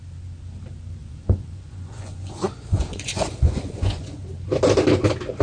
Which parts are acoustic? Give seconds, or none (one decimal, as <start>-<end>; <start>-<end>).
0.0-1.0; 4.2-5.4

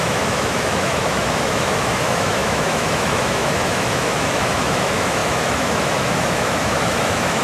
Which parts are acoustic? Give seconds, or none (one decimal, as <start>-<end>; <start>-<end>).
none

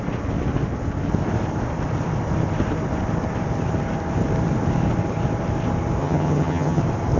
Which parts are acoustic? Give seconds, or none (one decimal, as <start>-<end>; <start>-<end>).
0.0-6.0; 6.8-7.2

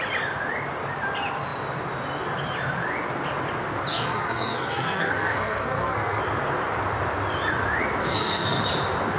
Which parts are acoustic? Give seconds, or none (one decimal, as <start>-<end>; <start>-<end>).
0.0-3.9; 6.2-8.0; 8.6-9.2

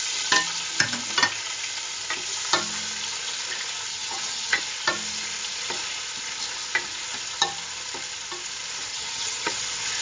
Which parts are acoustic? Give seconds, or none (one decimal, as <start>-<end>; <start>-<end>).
0.0-3.9; 4.6-8.9; 9.5-10.0

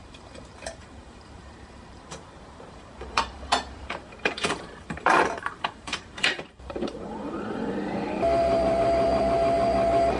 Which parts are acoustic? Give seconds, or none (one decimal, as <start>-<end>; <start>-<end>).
none

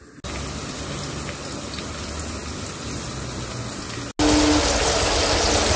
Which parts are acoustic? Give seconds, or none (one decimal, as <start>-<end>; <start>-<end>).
0.0-5.8

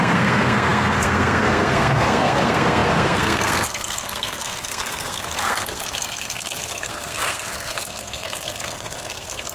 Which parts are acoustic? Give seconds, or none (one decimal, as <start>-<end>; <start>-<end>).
none